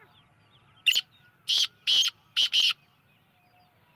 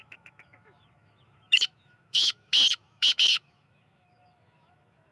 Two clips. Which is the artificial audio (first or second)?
second